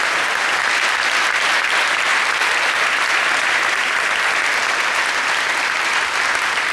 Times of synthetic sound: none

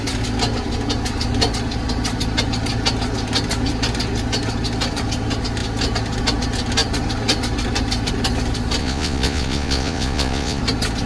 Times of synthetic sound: 8.8-10.6 (vocoder, Vocos)

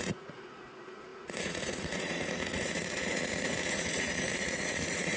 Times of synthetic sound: 0.0-5.2 (vocoder, Vocos)

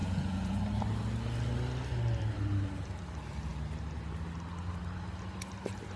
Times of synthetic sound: 0.0-0.6 (vocoder, Vocos)

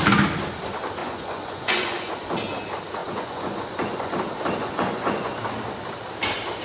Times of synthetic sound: 1.0-2.1 (vocoder, Vocos); 3.0-4.1; 4.6-5.3

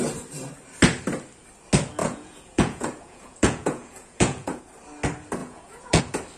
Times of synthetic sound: 2.0-4.6 (vocoder, Vocos); 5.4-6.0

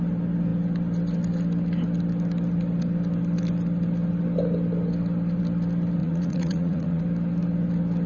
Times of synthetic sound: 6.0-7.0 (vocoder, Vocos)